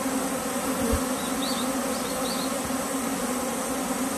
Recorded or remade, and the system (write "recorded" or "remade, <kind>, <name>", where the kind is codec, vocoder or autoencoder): recorded